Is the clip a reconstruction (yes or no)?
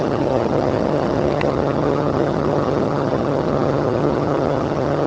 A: yes